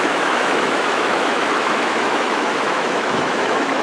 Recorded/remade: remade